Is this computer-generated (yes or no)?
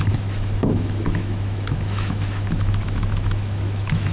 yes